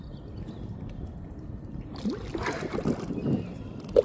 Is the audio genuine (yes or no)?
yes